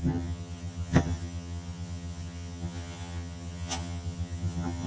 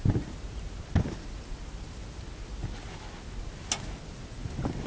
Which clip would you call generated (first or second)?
first